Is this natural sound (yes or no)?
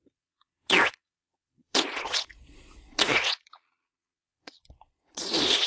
no